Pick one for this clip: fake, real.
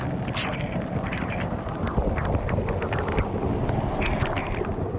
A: real